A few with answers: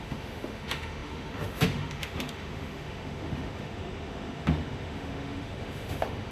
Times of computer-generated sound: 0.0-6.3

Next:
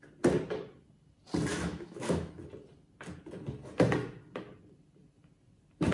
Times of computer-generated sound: 1.5-2.3